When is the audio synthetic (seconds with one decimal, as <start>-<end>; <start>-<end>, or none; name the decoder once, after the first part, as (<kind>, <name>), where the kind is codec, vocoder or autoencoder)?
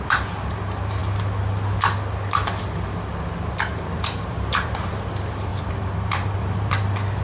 3.7-4.9 (vocoder, BigVGAN v2); 5.5-6.7